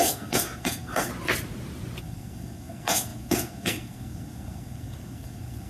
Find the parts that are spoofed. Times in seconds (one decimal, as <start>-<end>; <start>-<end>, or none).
0.0-1.1; 2.0-5.7